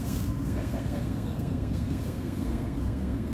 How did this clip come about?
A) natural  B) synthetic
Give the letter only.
B